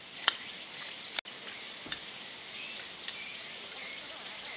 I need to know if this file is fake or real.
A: real